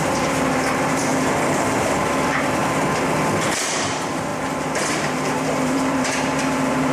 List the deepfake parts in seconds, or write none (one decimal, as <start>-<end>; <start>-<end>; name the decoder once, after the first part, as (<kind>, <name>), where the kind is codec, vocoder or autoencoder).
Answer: 0.0-2.6 (vocoder, BigVGAN v2); 3.6-6.9